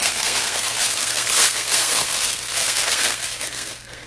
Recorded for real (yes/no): no